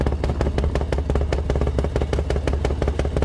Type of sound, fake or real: real